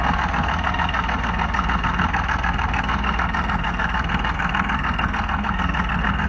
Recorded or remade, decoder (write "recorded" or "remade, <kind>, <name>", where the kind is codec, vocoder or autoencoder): remade, codec, SNAC